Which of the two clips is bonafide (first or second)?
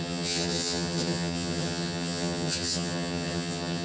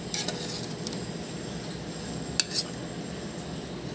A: second